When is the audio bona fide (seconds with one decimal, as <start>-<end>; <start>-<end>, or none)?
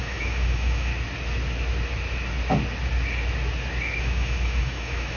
0.9-4.0